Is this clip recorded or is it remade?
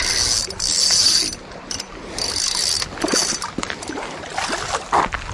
recorded